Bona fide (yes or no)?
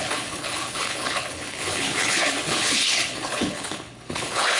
no